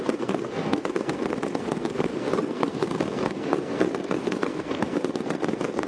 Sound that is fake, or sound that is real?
fake